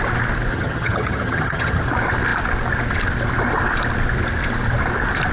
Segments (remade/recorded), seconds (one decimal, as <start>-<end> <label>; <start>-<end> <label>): 0.0-0.5 recorded; 0.5-1.8 remade; 1.8-5.3 recorded